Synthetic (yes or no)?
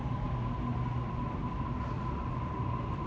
no